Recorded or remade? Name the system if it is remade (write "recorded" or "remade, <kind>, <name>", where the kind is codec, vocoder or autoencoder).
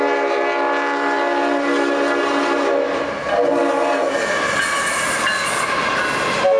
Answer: recorded